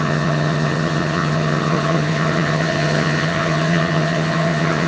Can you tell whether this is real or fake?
fake